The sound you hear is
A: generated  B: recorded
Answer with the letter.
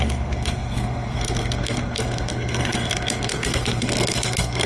A